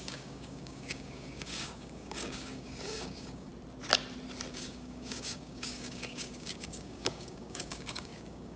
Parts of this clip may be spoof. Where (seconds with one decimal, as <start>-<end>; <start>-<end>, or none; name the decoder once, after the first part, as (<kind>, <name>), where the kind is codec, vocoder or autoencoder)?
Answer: 0.0-3.5 (codec, DAC); 4.5-8.6